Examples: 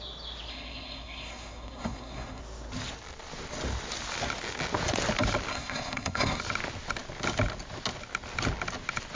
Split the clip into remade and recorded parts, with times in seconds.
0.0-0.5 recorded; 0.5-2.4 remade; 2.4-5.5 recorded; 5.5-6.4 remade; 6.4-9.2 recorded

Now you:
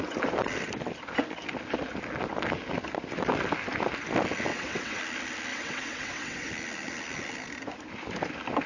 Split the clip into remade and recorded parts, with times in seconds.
0.0-4.5 recorded; 4.5-5.0 remade; 5.0-5.5 recorded; 5.5-6.5 remade; 6.5-8.7 recorded

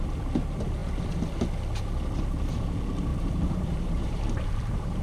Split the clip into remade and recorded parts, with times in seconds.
0.0-3.1 recorded; 3.1-5.0 remade